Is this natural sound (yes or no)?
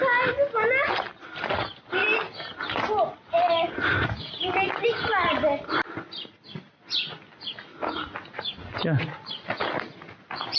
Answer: yes